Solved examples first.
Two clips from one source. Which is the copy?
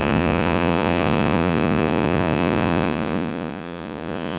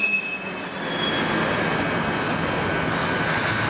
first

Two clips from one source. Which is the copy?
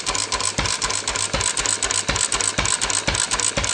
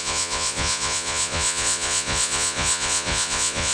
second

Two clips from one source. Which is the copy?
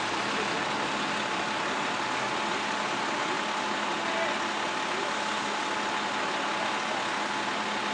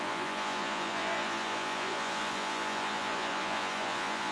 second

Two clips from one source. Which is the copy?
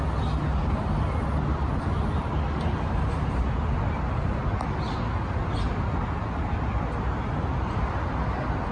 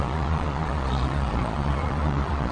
second